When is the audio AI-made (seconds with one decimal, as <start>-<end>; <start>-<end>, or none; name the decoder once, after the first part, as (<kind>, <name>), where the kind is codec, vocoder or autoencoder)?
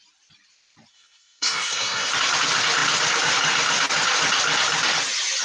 0.9-2.1 (codec, SNAC)